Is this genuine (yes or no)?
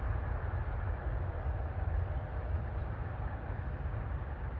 yes